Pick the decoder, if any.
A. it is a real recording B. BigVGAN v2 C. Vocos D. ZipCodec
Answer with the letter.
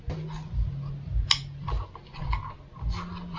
A